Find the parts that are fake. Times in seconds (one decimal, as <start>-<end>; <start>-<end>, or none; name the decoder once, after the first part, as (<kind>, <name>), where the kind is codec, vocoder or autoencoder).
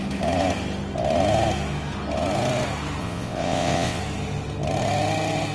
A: 3.0-4.0 (vocoder, WaveNeXt)